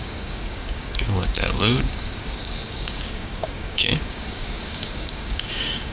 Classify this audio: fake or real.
fake